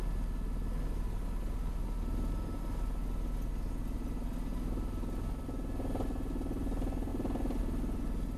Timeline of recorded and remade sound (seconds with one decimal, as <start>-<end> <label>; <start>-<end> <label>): 0.0-8.4 recorded

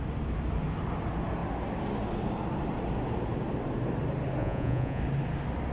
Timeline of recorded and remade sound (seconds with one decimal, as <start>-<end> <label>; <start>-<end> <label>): 0.0-4.4 recorded; 4.4-5.0 remade; 5.0-5.7 recorded